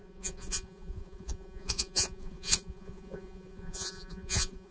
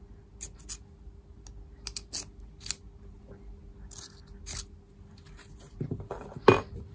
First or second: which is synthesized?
first